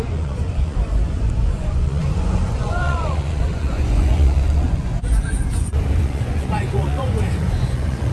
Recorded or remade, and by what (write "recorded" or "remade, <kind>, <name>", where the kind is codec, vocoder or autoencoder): remade, vocoder, Vocos